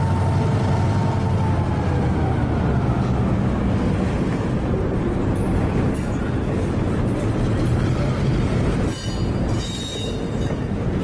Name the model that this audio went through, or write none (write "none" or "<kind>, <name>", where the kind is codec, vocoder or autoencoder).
none